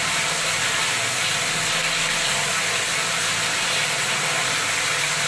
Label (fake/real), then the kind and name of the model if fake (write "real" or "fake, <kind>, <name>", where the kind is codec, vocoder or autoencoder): real